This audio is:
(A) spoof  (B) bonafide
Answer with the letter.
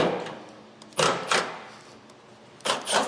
B